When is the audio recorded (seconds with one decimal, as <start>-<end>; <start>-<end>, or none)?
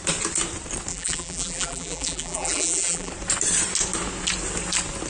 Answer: 0.0-0.9; 3.1-5.1